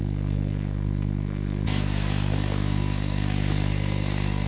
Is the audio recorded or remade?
remade